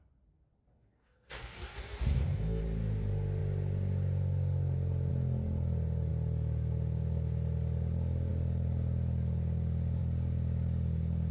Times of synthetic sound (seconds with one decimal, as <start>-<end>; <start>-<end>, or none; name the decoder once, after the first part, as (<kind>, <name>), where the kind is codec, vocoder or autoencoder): 0.7-2.6 (codec, DAC)